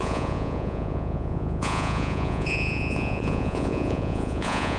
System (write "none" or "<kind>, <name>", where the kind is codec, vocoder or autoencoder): vocoder, Vocos